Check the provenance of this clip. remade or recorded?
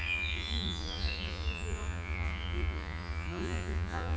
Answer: remade